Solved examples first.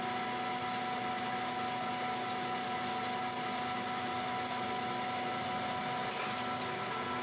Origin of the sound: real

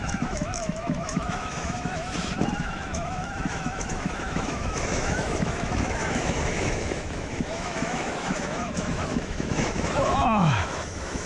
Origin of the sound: fake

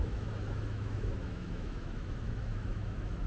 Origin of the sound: fake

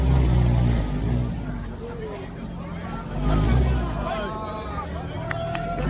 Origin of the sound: real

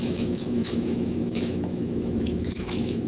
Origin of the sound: fake